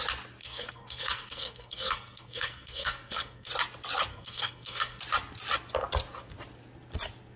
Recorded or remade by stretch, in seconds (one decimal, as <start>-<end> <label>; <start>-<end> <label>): 0.0-0.4 recorded; 0.4-3.5 remade; 3.5-4.1 recorded; 4.1-5.0 remade; 5.0-7.4 recorded